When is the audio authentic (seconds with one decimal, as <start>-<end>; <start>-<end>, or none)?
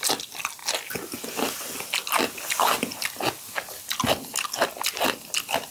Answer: 0.0-5.7